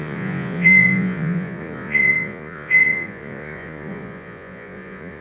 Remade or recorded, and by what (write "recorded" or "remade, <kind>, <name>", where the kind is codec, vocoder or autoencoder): remade, vocoder, Vocos